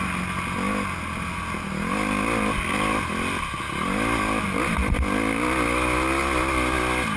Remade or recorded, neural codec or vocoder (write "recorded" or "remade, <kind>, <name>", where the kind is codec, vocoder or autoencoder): recorded